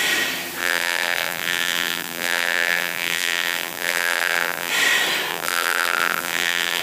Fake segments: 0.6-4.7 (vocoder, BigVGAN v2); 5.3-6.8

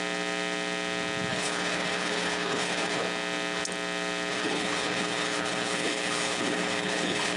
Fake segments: 1.3-3.0 (codec, HILCodec); 4.3-7.4

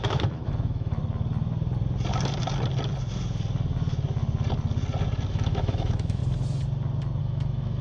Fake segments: 0.0-1.0 (autoencoder, DAC-VAE); 5.3-6.2; 7.2-7.8

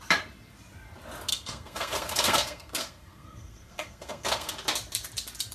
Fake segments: 1.3-4.5 (codec, SNAC)

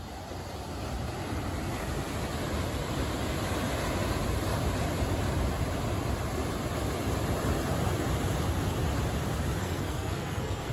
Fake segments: 9.6-10.7 (codec, SNAC)